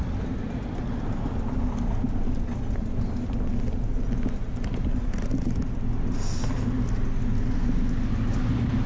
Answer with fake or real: real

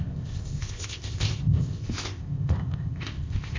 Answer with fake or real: fake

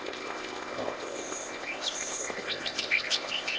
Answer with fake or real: fake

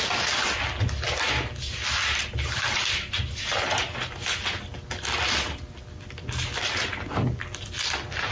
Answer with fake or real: real